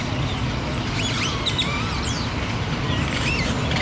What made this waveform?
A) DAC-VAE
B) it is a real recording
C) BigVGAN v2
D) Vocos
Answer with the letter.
C